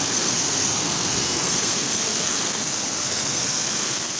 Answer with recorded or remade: remade